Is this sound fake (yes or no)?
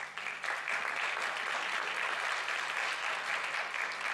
no